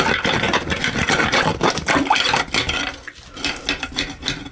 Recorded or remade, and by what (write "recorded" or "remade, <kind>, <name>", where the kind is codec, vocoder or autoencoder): recorded